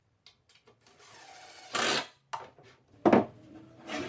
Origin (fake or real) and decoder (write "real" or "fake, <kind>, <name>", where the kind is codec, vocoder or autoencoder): real